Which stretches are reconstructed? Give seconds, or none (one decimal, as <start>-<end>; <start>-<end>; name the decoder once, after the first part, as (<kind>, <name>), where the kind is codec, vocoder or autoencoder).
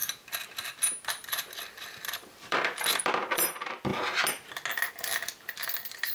1.1-3.9 (vocoder, BigVGAN v2); 4.9-6.1